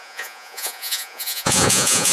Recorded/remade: remade